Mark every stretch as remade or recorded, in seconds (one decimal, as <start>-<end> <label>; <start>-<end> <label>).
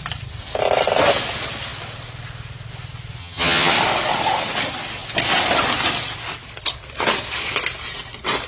0.0-3.2 recorded; 3.2-3.7 remade; 3.7-8.5 recorded